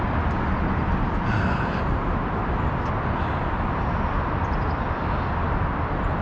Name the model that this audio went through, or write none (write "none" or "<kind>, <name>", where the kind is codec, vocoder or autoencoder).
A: none